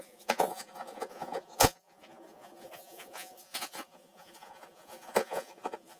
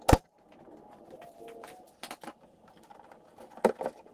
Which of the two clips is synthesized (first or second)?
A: first